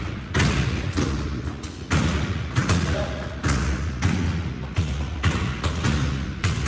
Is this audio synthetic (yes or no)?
yes